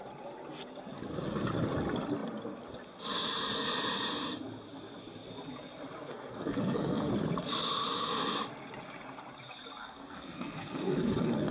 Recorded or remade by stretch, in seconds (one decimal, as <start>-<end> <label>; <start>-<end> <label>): 0.0-6.1 recorded; 6.1-7.1 remade; 7.1-9.8 recorded; 9.8-11.5 remade